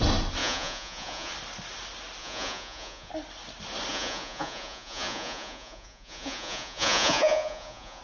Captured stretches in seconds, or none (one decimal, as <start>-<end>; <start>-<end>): 0.0-0.4; 1.3-2.2; 3.1-3.9